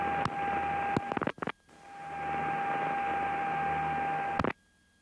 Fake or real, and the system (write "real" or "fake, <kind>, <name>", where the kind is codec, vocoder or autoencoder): real